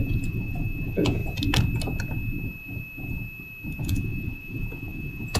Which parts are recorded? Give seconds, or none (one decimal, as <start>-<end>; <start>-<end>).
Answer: 1.2-3.8